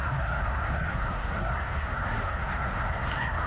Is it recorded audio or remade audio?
remade